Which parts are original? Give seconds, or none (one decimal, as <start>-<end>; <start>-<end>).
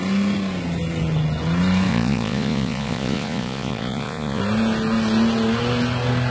0.0-1.9; 4.4-6.3